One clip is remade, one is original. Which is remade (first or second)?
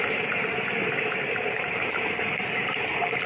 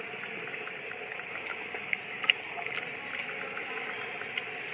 first